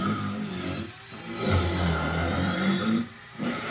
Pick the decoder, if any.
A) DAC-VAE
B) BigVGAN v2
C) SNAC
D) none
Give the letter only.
B